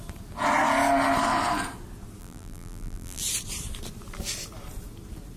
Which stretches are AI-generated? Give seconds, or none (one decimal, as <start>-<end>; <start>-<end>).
2.2-3.2